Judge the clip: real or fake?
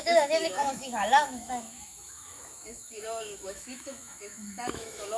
fake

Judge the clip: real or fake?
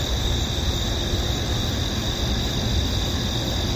real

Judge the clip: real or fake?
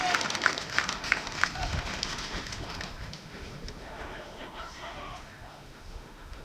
fake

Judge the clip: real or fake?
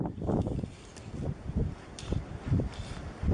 real